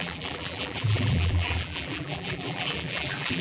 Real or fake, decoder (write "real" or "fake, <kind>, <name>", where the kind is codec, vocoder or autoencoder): fake, vocoder, BigVGAN v2